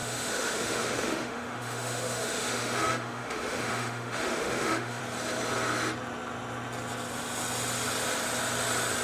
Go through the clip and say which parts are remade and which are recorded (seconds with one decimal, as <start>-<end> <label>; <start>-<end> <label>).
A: 0.0-5.0 remade; 5.0-9.0 recorded